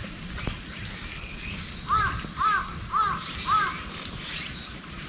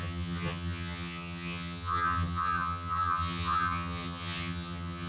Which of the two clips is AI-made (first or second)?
second